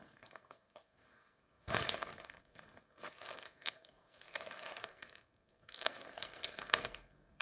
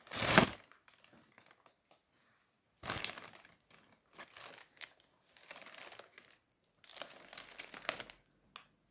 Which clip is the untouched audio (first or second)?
second